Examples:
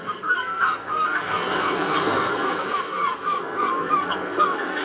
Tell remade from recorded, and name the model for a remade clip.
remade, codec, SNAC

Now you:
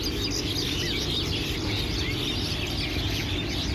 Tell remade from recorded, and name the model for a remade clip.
recorded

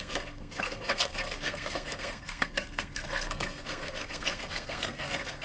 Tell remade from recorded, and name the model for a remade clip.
remade, codec, SNAC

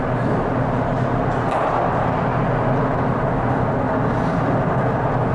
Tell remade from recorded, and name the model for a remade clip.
recorded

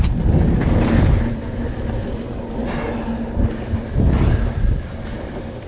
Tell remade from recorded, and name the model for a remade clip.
recorded